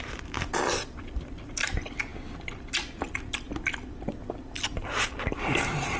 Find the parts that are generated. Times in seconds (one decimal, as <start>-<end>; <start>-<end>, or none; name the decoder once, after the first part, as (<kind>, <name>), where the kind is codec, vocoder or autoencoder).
none